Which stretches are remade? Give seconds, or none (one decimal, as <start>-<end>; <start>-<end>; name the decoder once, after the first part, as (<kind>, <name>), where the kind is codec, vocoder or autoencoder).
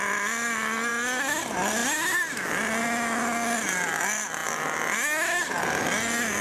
none